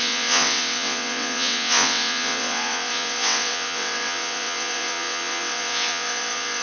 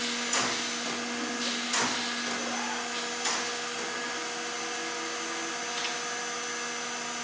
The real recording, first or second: second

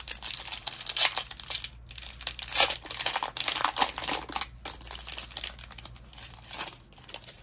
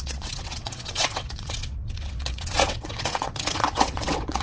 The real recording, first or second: first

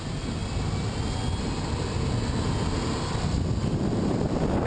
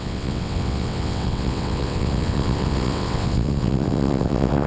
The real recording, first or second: first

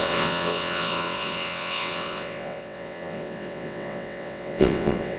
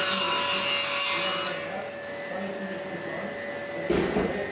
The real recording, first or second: second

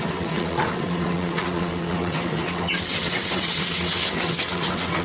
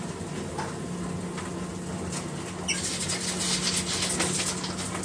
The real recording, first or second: second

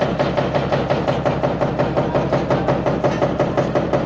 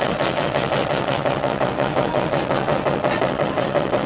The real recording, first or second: first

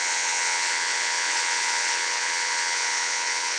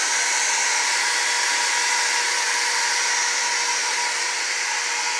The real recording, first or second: second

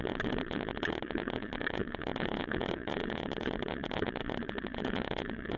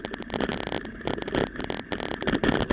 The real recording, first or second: second